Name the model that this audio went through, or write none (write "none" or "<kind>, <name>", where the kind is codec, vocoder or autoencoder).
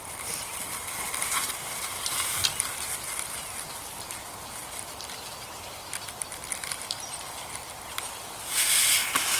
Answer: vocoder, BigVGAN v2